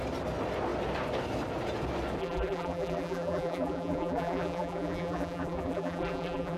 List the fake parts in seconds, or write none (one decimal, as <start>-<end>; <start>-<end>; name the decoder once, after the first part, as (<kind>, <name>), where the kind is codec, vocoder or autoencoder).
2.2-6.6 (vocoder, BigVGAN v2)